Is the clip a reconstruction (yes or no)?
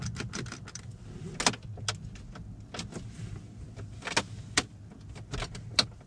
no